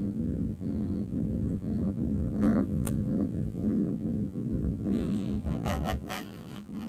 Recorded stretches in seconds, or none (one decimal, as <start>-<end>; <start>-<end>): none